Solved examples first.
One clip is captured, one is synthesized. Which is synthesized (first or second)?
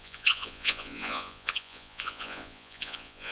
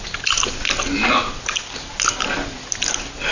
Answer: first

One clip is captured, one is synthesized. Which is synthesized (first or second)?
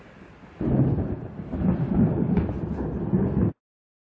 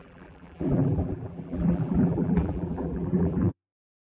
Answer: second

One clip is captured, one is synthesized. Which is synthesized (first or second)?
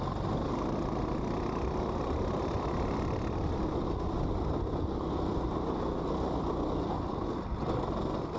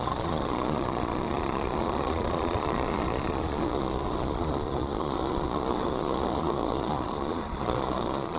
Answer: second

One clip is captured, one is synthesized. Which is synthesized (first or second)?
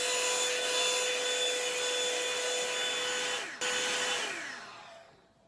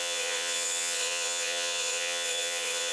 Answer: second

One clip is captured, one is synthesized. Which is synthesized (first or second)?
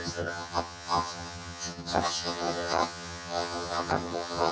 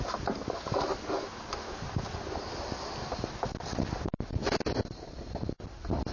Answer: first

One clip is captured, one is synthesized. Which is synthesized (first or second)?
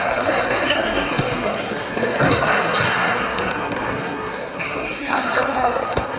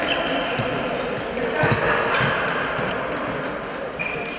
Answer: first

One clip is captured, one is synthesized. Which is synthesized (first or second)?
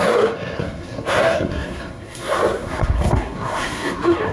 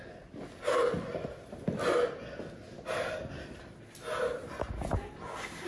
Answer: first